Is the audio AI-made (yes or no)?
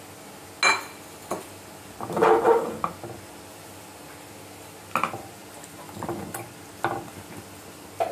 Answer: no